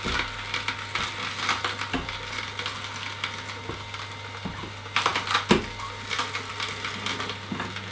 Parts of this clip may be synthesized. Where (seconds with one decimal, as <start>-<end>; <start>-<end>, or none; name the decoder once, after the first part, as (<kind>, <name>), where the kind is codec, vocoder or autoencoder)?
none